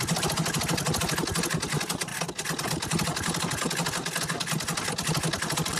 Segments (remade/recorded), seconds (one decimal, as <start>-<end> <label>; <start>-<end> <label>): 0.0-5.8 recorded